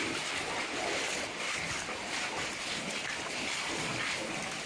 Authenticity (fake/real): real